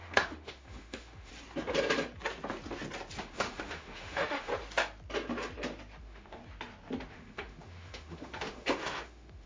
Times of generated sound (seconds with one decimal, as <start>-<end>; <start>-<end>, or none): 0.0-1.3; 3.2-4.5; 6.0-6.4; 7.1-9.5